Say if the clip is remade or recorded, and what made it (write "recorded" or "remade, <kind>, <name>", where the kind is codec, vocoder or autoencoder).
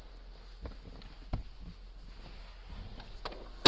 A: recorded